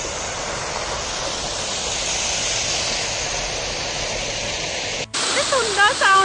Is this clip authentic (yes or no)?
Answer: yes